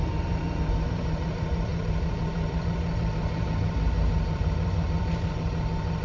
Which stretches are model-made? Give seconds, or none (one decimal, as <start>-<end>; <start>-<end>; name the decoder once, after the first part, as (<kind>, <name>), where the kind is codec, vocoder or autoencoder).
0.0-6.0 (vocoder, BigVGAN v2)